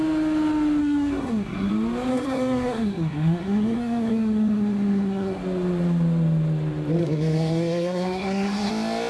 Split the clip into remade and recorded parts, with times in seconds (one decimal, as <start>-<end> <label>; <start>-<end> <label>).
0.0-0.8 recorded; 0.8-1.7 remade; 1.7-2.1 recorded; 2.1-5.4 remade; 5.4-7.0 recorded; 7.0-8.7 remade; 8.7-9.1 recorded